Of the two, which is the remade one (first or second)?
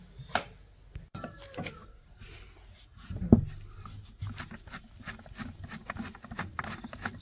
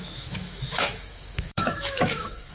second